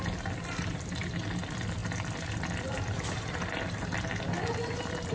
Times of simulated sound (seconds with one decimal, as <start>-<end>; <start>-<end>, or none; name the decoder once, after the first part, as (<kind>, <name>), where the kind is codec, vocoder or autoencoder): none

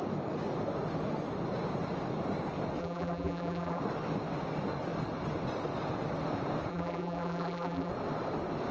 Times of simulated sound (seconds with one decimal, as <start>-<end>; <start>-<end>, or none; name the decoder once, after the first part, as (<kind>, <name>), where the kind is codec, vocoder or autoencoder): 2.8-3.8 (vocoder, BigVGAN v2); 6.7-7.9

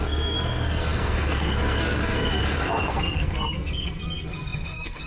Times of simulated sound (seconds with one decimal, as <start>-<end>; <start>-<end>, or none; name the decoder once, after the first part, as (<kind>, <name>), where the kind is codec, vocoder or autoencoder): 0.0-5.1 (codec, SNAC)

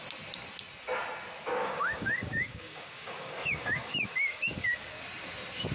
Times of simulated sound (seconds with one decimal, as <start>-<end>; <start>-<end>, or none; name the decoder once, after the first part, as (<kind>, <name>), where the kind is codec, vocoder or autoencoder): 1.6-5.0 (codec, DAC)

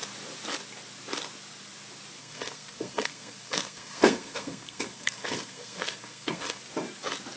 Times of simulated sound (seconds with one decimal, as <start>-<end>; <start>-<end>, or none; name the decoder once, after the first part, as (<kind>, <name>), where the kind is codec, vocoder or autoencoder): 2.2-6.6 (codec, SNAC)

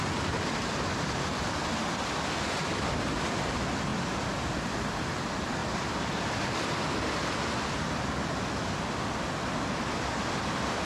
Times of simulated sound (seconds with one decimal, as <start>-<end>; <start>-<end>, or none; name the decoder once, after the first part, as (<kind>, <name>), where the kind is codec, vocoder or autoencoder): 3.9-4.7 (vocoder, BigVGAN v2); 5.6-6.8